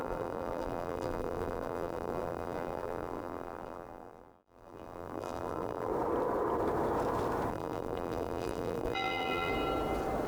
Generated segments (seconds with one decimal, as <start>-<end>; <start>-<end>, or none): 0.0-5.9; 7.5-9.5